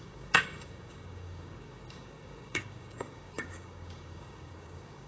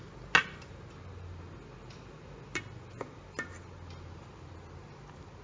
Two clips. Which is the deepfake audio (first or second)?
first